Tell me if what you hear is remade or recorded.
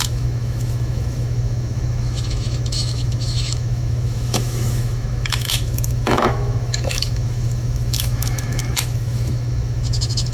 remade